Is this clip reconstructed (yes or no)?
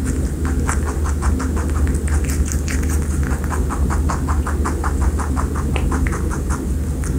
no